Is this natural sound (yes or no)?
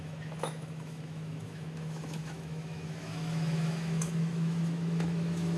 no